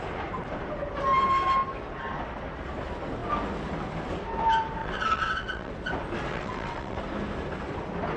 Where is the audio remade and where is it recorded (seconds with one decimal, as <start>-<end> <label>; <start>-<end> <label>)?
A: 0.0-4.8 recorded; 4.8-5.7 remade; 5.7-6.3 recorded; 6.3-7.0 remade; 7.0-8.2 recorded